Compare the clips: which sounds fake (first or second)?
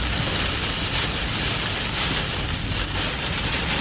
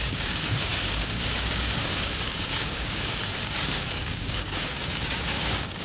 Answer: second